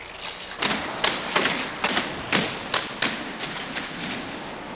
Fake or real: real